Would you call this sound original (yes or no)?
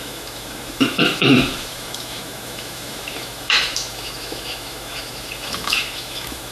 no